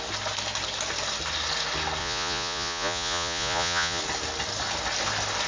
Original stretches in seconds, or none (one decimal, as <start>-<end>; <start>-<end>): 0.0-2.0; 4.0-5.5